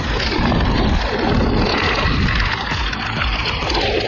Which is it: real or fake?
real